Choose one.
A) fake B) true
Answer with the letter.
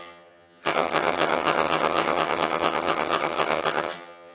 A